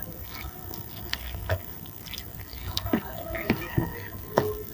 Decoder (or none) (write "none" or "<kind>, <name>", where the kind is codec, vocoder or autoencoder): codec, SNAC